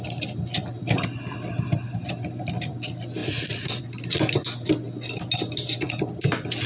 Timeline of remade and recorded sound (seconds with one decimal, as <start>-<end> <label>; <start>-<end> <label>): 0.0-3.2 recorded; 3.2-3.8 remade; 3.8-6.7 recorded